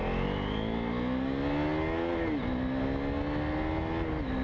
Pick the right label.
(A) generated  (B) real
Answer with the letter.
B